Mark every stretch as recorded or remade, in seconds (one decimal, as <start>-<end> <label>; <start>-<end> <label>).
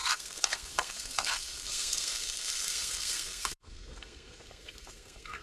0.0-5.4 remade